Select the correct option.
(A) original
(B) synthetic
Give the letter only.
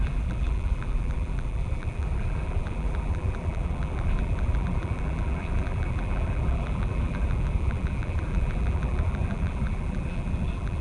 B